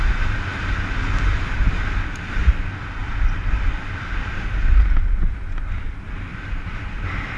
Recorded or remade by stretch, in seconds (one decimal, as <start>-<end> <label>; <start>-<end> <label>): 0.0-1.3 recorded; 1.3-2.4 remade; 2.4-3.0 recorded; 3.0-4.4 remade; 4.4-6.3 recorded; 6.3-6.9 remade; 6.9-7.4 recorded